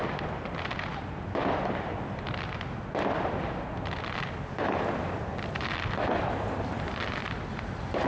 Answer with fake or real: fake